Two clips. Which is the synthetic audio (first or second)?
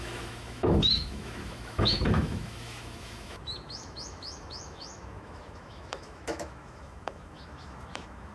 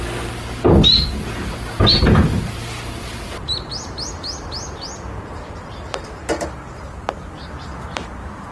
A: first